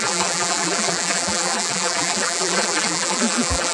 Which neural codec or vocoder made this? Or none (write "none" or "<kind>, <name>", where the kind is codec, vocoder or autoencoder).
vocoder, BigVGAN v2